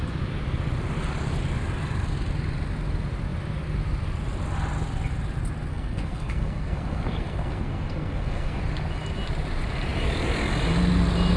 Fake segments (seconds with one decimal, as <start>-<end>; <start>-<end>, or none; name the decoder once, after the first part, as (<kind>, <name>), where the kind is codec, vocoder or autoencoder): 5.7-8.6 (codec, SNAC)